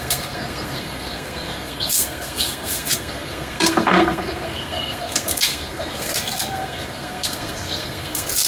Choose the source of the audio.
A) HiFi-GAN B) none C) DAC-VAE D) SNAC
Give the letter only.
D